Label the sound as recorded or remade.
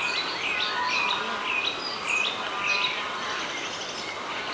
recorded